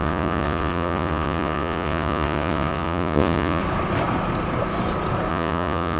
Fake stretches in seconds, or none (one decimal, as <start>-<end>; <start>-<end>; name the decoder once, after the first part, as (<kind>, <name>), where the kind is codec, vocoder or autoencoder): 0.0-3.6 (vocoder, Vocos); 5.3-6.0